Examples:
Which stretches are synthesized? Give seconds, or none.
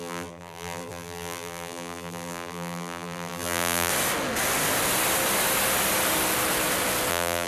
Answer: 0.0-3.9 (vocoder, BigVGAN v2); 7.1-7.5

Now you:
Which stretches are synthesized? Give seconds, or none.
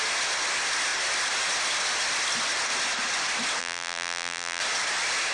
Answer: 3.6-4.6 (vocoder, BigVGAN v2)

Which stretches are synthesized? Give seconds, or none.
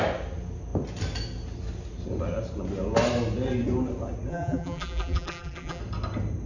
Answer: 4.3-5.8 (vocoder, BigVGAN v2)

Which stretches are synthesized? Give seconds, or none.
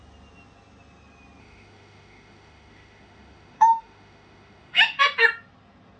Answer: 1.4-5.0 (autoencoder, DAC-VAE)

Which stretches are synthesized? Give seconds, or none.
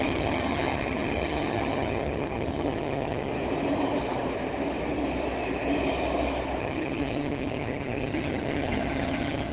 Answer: 0.0-3.3 (vocoder, HiFi-GAN); 6.6-9.5